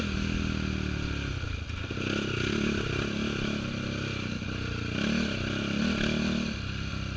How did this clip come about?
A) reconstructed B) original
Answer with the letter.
B